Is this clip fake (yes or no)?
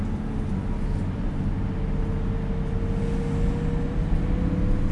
no